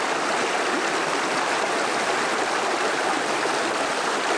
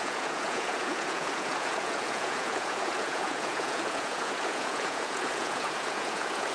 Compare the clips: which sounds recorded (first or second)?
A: first